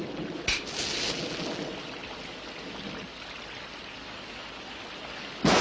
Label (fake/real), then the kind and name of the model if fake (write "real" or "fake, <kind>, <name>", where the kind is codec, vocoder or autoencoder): real